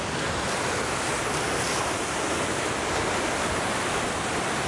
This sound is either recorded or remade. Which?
recorded